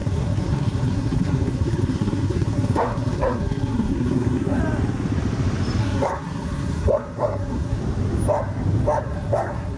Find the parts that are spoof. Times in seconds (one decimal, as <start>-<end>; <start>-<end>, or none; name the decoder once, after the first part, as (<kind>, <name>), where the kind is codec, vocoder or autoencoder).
0.0-4.6 (codec, SNAC); 5.8-7.8; 9.0-9.8